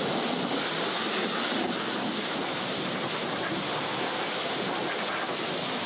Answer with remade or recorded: recorded